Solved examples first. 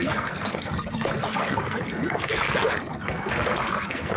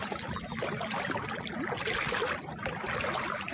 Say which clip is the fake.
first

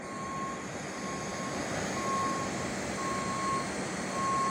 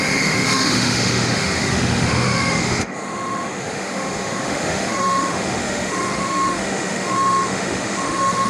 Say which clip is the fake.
second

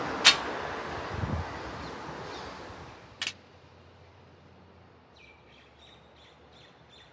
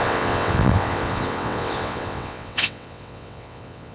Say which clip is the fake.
second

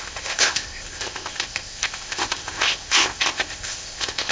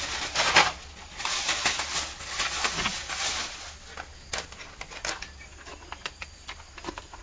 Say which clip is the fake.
first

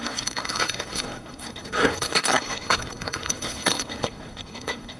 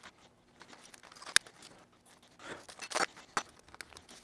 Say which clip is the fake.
first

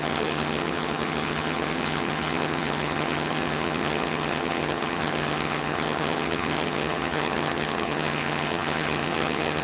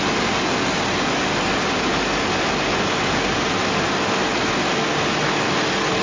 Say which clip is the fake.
first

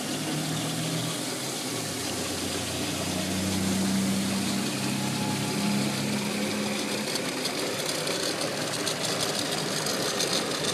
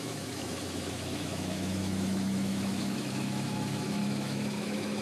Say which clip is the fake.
second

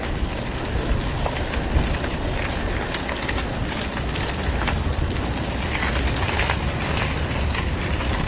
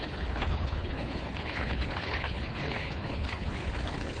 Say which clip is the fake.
second